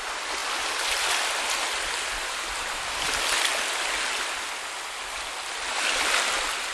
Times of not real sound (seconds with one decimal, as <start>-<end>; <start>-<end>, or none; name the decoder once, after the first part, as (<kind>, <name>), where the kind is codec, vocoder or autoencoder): none